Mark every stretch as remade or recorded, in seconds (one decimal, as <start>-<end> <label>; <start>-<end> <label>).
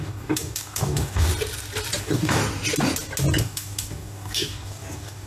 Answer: 0.0-1.3 remade; 1.3-2.0 recorded; 2.0-2.4 remade; 2.4-3.4 recorded; 3.4-5.3 remade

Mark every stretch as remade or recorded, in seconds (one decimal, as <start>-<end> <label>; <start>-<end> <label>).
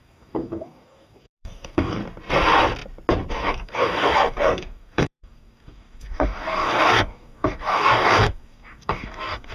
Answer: 0.0-2.0 remade; 2.0-3.3 recorded; 3.3-9.5 remade